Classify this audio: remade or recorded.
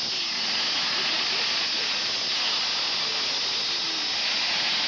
recorded